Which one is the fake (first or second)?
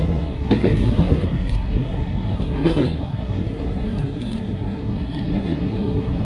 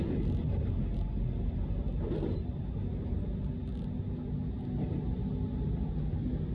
first